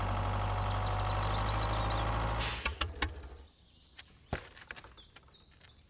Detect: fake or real real